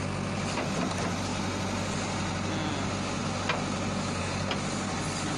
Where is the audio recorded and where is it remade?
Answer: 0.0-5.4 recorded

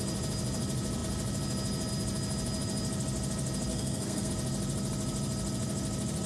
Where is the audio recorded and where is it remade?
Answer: 0.0-3.7 recorded; 3.7-4.3 remade; 4.3-6.3 recorded

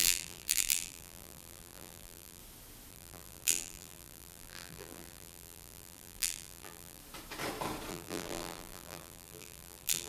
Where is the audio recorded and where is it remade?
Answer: 0.0-2.4 remade; 2.4-2.9 recorded; 2.9-7.0 remade; 7.0-7.9 recorded; 7.9-10.1 remade

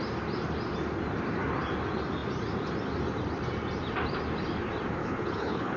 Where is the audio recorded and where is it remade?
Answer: 0.0-5.0 recorded; 5.0-5.8 remade

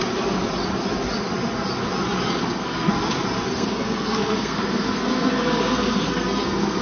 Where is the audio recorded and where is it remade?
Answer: 0.0-2.4 recorded; 2.4-2.9 remade; 2.9-3.5 recorded; 3.5-6.8 remade

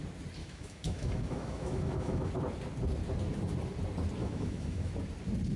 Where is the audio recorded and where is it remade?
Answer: 0.0-0.4 recorded; 0.4-2.3 remade; 2.3-4.2 recorded; 4.2-4.9 remade; 4.9-5.6 recorded